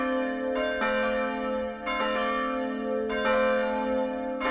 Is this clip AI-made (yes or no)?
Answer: no